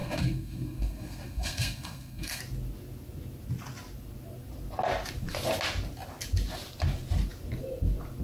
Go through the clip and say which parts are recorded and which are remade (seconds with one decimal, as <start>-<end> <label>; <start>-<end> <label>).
0.0-2.4 remade; 2.4-8.2 recorded